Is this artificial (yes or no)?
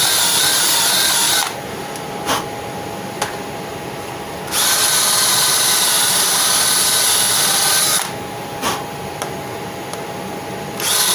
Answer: no